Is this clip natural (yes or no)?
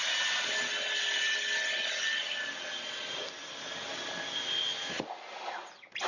yes